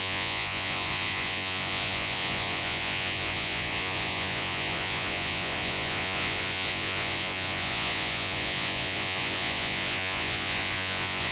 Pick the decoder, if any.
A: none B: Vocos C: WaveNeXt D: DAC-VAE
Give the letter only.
B